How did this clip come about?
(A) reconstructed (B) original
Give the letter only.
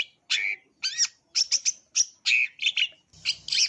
B